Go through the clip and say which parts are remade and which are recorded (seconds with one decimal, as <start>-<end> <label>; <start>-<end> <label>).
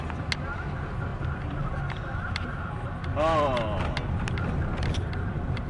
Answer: 0.0-5.7 recorded